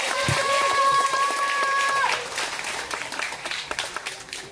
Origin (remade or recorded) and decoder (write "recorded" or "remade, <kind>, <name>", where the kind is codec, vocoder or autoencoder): remade, vocoder, BigVGAN v2